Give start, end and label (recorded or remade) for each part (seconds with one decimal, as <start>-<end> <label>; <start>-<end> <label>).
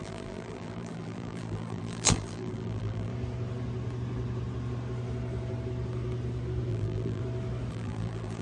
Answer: 0.0-3.1 remade; 3.1-6.7 recorded; 6.7-7.2 remade; 7.2-7.7 recorded; 7.7-8.4 remade